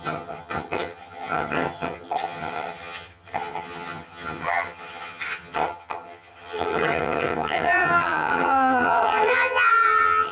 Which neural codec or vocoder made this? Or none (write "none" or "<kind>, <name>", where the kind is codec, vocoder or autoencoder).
vocoder, HiFi-GAN